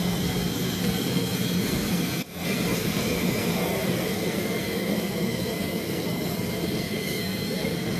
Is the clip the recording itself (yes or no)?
no